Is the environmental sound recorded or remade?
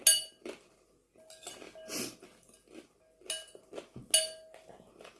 recorded